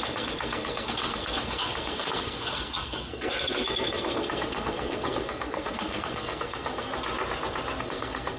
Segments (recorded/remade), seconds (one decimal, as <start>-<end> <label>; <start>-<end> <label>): 0.0-6.9 remade; 6.9-7.8 recorded; 7.8-8.4 remade